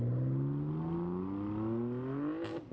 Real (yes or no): yes